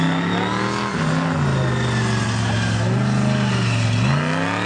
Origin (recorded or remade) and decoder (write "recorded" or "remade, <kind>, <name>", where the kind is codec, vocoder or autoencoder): recorded